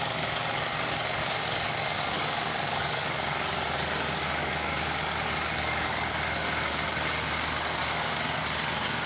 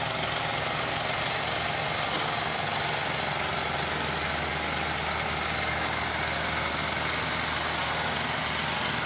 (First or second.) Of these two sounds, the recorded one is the second